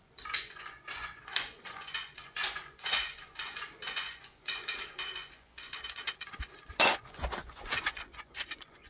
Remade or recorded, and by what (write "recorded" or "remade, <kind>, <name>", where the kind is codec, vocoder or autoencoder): remade, vocoder, Vocos